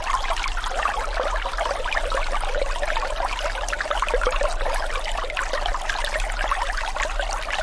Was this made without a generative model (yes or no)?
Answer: yes